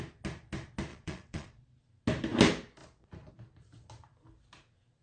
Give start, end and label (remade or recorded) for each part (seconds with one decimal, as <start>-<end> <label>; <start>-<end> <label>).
0.0-0.9 recorded; 0.9-1.8 remade; 1.8-5.0 recorded